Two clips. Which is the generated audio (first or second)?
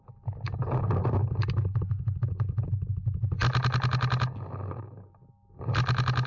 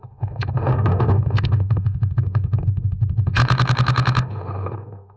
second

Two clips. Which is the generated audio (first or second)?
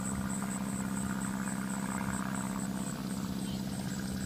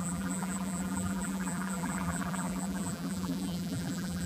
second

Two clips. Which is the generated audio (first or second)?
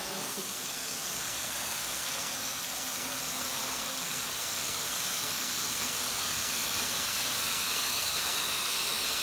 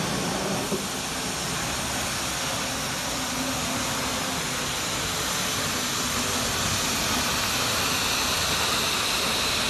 first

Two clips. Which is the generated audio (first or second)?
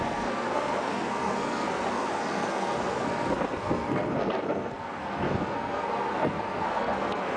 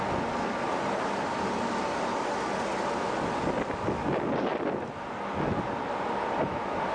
first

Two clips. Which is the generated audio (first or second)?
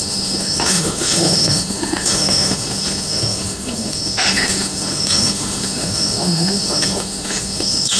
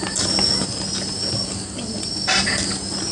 first